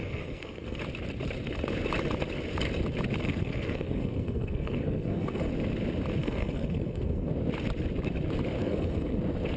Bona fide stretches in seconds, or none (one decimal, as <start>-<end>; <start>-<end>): 0.8-3.2; 5.5-6.2; 7.3-8.6; 9.2-9.6